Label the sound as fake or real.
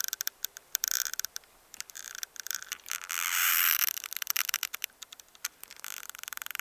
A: fake